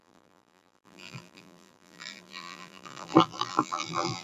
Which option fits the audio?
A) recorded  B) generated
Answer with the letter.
B